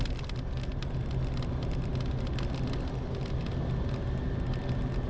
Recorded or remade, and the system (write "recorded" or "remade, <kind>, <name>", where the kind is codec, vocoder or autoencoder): recorded